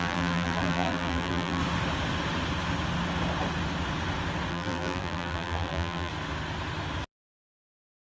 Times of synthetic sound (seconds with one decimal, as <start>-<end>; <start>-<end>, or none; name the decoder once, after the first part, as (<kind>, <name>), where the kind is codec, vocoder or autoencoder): 0.0-1.6 (vocoder, BigVGAN v2); 4.5-6.1; 7.1-8.1